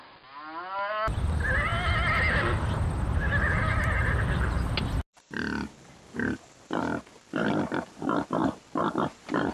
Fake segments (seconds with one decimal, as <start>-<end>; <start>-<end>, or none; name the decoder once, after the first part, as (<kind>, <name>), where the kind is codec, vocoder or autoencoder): 8.4-9.5 (vocoder, BigVGAN v2)